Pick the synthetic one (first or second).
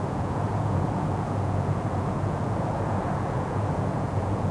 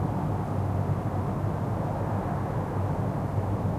first